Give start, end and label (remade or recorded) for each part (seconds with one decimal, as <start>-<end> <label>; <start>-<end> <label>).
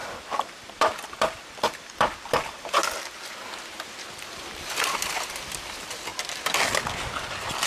0.0-2.8 remade; 2.8-4.1 recorded; 4.1-6.1 remade; 6.1-7.7 recorded